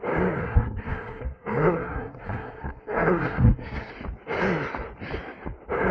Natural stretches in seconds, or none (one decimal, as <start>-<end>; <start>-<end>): 0.0-0.4; 3.9-5.9